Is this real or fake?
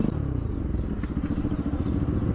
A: real